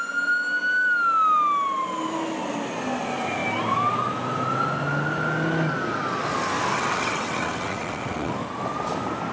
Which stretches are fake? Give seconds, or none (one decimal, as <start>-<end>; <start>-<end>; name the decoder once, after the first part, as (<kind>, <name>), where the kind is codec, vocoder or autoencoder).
6.7-8.3 (vocoder, WaveNeXt)